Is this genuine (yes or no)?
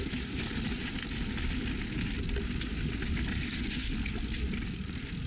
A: yes